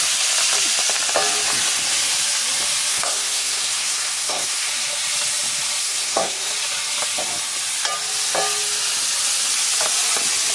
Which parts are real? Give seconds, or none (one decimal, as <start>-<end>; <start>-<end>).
0.0-2.9; 4.7-5.8; 6.5-10.5